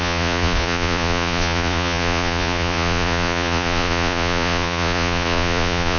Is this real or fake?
fake